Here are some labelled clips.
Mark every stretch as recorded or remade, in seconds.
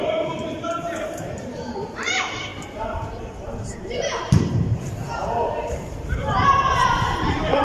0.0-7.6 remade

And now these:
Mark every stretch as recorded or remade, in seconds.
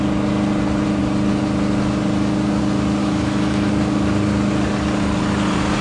0.0-3.0 recorded; 3.0-3.7 remade; 3.7-5.8 recorded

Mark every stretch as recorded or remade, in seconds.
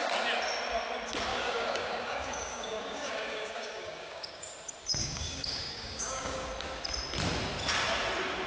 0.0-1.3 recorded; 1.3-4.5 remade; 4.5-5.0 recorded; 5.0-6.5 remade; 6.5-8.5 recorded